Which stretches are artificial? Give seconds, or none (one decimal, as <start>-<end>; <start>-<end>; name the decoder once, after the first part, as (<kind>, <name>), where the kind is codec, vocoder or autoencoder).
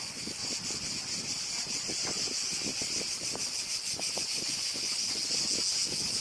0.0-0.4 (vocoder, Vocos); 4.1-5.2